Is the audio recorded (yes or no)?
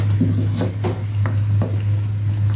yes